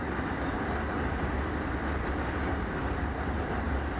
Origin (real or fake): real